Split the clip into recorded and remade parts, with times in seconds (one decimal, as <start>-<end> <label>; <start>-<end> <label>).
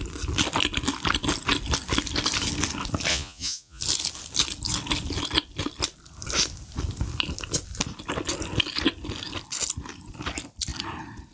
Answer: 0.0-3.1 recorded; 3.1-3.8 remade; 3.8-11.3 recorded